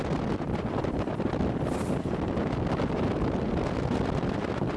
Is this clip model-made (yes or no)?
yes